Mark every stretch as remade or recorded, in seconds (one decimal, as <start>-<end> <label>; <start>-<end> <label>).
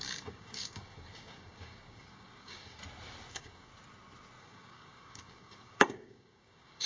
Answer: 0.0-2.8 remade; 2.8-3.3 recorded; 3.3-3.7 remade; 3.7-4.4 recorded; 4.4-6.9 remade